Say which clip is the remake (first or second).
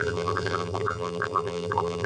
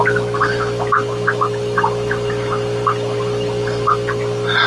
first